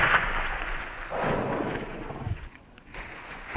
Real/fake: fake